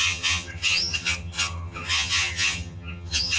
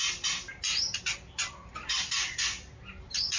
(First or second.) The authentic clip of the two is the second